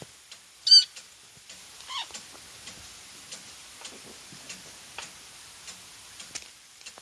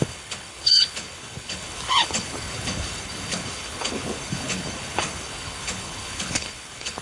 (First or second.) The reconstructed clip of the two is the second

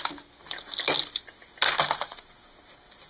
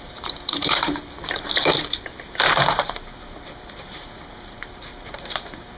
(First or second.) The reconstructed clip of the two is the second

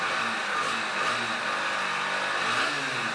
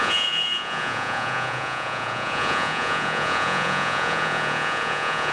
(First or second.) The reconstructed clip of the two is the second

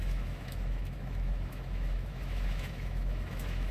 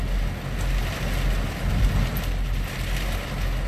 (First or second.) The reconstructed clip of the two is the first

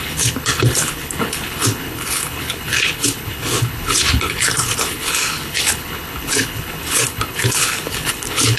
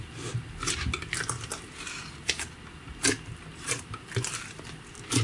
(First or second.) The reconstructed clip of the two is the first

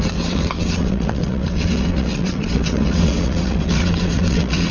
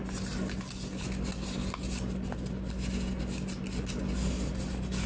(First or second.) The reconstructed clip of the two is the first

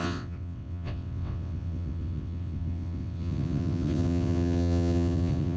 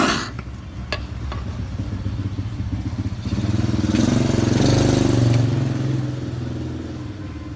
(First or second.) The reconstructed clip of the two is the first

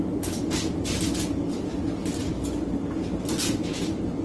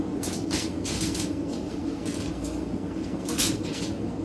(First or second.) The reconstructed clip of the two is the second